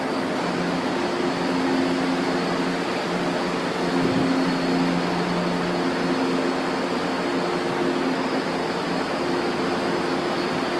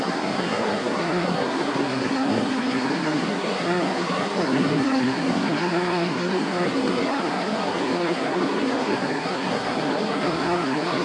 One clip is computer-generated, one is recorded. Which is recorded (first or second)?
first